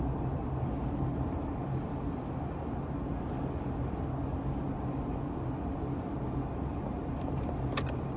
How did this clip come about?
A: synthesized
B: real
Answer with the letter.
B